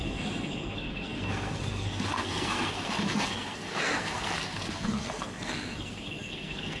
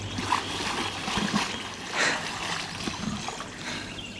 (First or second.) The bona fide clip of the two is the second